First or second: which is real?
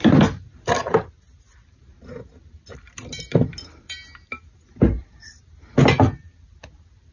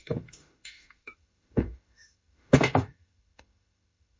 first